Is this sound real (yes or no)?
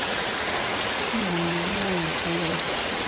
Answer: no